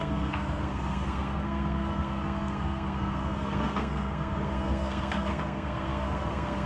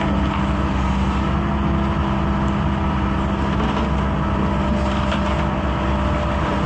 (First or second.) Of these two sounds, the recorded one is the second